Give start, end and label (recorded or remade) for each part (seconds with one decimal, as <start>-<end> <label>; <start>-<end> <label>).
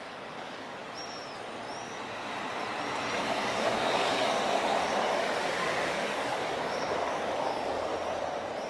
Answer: 0.0-0.8 remade; 0.8-3.2 recorded; 3.2-7.9 remade; 7.9-8.7 recorded